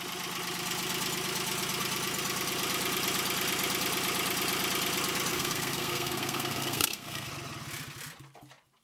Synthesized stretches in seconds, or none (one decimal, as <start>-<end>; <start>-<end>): 5.3-7.3